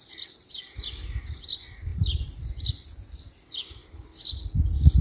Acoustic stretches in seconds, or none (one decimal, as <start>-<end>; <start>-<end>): 0.0-1.9; 2.5-5.0